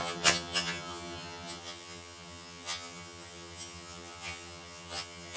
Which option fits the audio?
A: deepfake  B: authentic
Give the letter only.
A